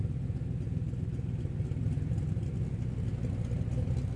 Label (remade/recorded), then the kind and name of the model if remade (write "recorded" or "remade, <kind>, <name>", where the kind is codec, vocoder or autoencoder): recorded